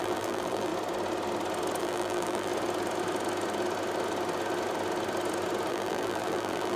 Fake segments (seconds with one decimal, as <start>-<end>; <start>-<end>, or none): 0.0-0.7; 1.8-2.5; 5.7-6.8